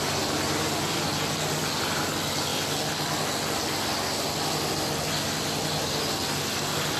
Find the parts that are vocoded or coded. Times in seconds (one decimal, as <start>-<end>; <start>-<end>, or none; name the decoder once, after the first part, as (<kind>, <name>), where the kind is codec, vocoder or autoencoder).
none